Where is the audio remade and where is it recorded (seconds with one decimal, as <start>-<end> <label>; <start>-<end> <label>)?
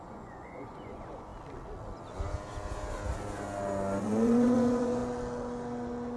0.0-1.3 remade; 1.3-4.0 recorded; 4.0-5.0 remade; 5.0-6.2 recorded